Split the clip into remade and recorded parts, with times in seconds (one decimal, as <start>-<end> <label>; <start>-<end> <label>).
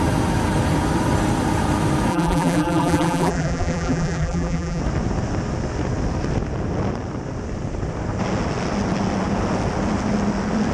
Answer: 0.0-2.1 recorded; 2.1-4.8 remade; 4.8-10.7 recorded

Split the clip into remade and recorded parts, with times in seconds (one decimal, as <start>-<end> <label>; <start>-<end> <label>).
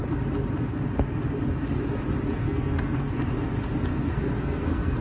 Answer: 0.0-2.4 recorded; 2.4-3.5 remade; 3.5-3.9 recorded; 3.9-5.0 remade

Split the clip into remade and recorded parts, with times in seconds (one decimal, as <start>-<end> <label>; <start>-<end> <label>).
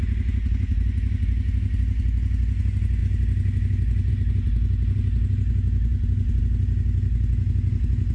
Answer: 0.0-8.1 recorded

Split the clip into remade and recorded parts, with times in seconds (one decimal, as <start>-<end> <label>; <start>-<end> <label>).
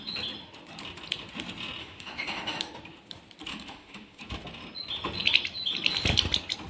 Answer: 0.0-1.8 recorded; 1.8-2.6 remade; 2.6-3.5 recorded; 3.5-4.2 remade; 4.2-6.7 recorded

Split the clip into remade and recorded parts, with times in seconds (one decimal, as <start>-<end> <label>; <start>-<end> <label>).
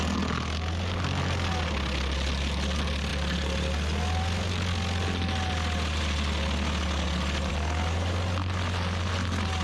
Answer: 0.0-9.6 recorded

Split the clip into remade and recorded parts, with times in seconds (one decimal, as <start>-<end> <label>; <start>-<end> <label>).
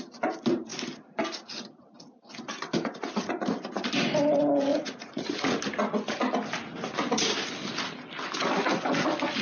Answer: 0.0-4.7 recorded; 4.7-5.6 remade; 5.6-9.4 recorded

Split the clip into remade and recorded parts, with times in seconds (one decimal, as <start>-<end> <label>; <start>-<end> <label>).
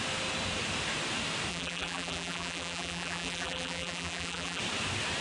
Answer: 0.0-1.5 recorded; 1.5-4.6 remade; 4.6-5.2 recorded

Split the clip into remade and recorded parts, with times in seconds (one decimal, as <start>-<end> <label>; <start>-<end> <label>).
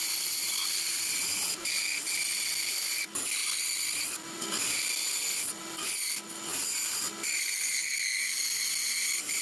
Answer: 0.0-9.4 recorded